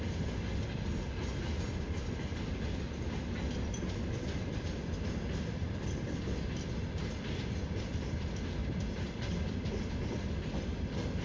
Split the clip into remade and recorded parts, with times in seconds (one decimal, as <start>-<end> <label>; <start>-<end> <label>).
0.0-11.2 recorded